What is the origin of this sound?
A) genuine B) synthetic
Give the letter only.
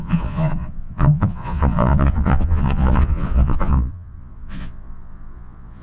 B